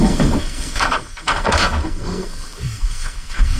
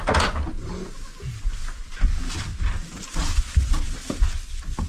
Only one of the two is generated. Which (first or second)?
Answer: first